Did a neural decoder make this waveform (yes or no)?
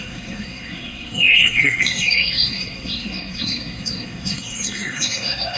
yes